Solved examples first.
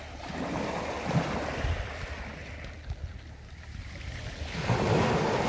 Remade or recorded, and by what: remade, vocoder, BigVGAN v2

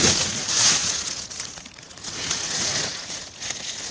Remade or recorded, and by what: remade, vocoder, Vocos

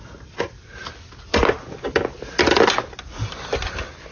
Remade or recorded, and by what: recorded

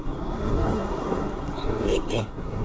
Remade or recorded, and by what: remade, codec, SNAC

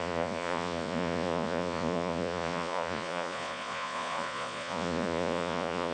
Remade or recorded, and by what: remade, vocoder, Vocos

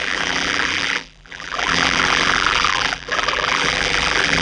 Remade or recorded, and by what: remade, vocoder, BigVGAN v2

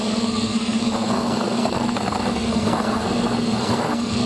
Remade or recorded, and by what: remade, codec, SNAC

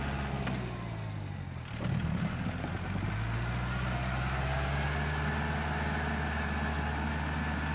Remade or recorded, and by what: recorded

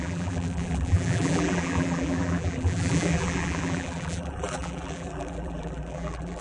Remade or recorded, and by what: remade, vocoder, BigVGAN v2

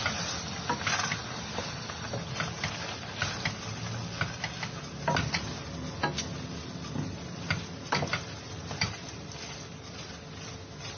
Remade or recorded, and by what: recorded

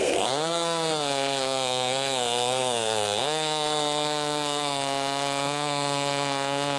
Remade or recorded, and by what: remade, codec, SNAC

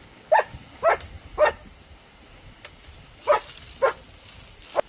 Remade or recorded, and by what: recorded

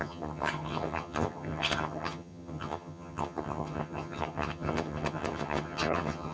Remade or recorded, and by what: remade, vocoder, HiFi-GAN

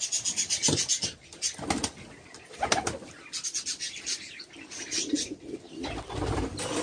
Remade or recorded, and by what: recorded